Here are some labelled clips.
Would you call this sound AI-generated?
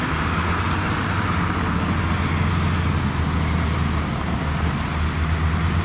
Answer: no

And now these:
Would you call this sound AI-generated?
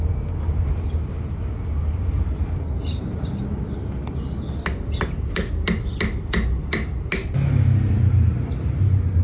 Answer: no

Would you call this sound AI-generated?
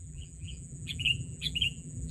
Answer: yes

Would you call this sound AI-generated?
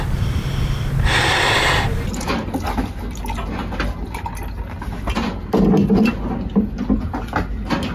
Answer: no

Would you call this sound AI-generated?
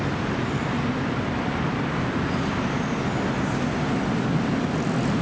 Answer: no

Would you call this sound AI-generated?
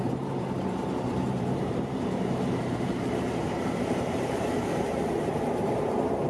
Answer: yes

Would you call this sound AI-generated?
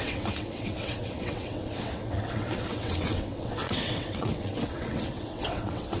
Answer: yes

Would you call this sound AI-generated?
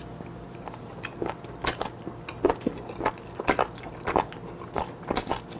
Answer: no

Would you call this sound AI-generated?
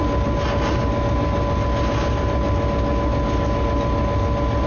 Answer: no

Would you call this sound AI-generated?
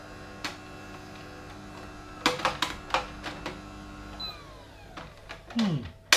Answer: no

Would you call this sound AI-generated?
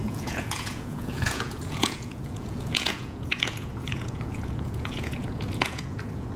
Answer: yes